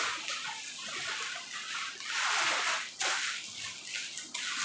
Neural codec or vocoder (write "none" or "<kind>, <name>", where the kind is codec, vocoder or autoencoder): none